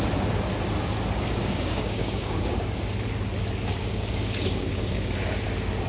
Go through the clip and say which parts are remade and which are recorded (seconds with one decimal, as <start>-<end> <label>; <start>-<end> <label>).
0.0-1.4 recorded; 1.4-2.8 remade; 2.8-3.7 recorded; 3.7-5.1 remade; 5.1-5.9 recorded